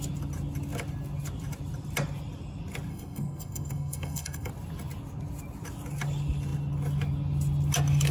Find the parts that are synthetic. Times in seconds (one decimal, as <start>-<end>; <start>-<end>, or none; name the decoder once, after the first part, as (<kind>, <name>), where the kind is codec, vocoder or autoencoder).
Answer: 2.9-4.5 (codec, SNAC)